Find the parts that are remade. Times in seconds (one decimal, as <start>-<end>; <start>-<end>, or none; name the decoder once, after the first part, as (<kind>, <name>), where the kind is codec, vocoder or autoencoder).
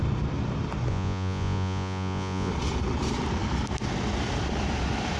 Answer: 0.9-2.5 (vocoder, Vocos)